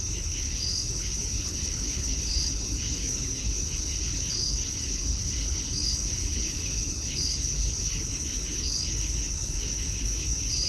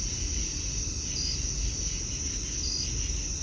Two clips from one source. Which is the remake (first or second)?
first